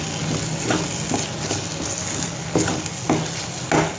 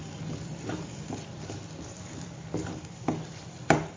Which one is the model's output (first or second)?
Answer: second